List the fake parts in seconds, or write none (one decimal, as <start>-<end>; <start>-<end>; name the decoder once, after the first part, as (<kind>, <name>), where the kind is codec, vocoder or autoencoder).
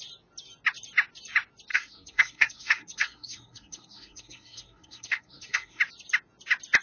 1.7-5.8 (codec, SNAC)